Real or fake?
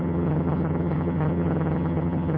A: fake